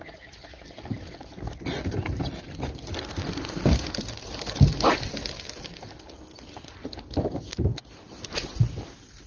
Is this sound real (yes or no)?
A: yes